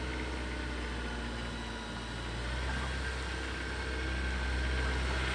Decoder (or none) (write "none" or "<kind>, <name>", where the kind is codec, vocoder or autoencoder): none